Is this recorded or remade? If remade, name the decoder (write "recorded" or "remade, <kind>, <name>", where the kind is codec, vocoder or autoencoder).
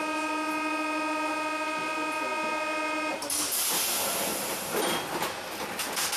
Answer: recorded